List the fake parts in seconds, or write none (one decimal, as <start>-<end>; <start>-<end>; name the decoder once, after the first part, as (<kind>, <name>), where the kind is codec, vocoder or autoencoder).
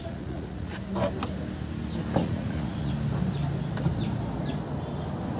0.0-0.7 (vocoder, Vocos); 2.2-2.9